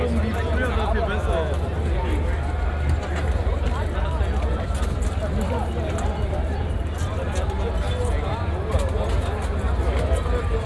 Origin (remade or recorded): recorded